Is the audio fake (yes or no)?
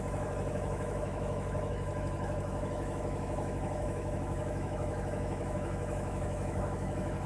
yes